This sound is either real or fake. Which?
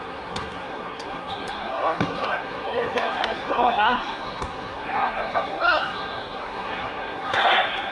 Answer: fake